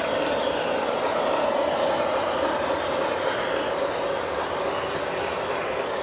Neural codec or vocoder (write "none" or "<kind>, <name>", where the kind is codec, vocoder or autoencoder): none